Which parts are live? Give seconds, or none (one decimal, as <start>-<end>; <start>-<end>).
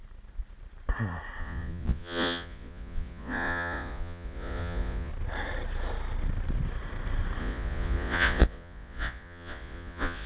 0.0-1.4; 5.1-7.4